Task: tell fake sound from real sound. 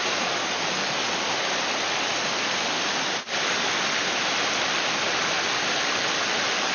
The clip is real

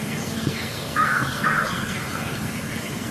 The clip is fake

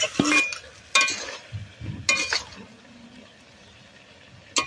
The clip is real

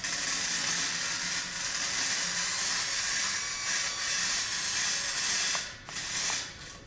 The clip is real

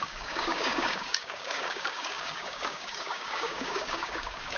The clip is fake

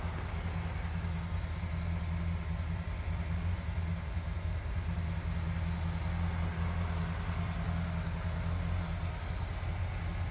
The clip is real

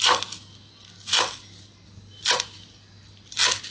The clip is real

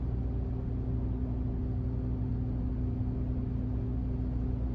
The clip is real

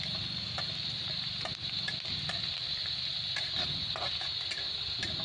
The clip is real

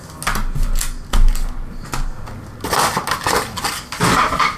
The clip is real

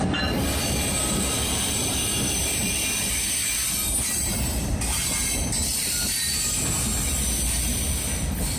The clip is real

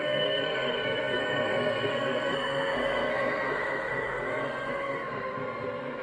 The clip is fake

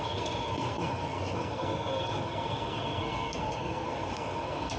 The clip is fake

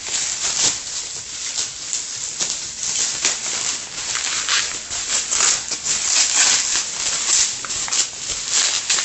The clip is real